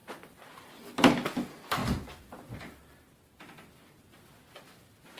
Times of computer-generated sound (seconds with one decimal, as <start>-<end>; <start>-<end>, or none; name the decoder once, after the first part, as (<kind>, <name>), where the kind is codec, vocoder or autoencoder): 0.0-0.7 (vocoder, BigVGAN v2)